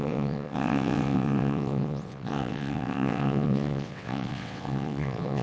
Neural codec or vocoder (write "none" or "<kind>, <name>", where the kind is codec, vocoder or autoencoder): vocoder, WaveNeXt